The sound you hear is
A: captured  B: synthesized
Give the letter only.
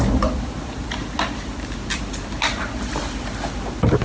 A